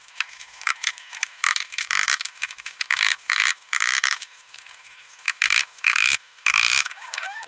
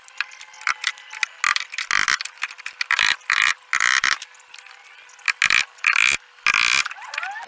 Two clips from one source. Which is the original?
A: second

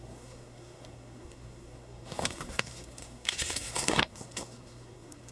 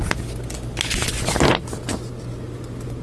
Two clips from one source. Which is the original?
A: second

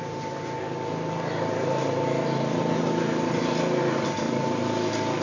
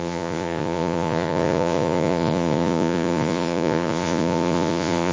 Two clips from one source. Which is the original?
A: first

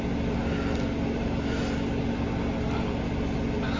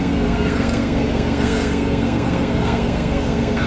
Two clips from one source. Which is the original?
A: first